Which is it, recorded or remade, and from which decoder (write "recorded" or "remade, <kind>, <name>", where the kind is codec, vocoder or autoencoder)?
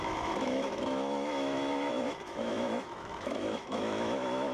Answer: remade, autoencoder, DAC-VAE